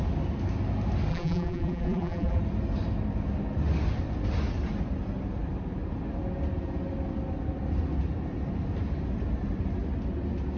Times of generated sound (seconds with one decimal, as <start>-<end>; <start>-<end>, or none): 1.1-2.4